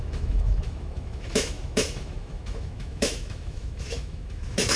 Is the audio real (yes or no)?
no